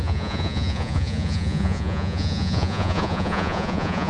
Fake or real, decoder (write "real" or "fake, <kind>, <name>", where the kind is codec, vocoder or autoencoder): fake, vocoder, Vocos